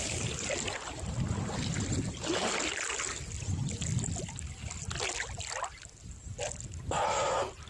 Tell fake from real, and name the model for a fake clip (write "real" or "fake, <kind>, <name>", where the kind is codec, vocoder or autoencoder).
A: real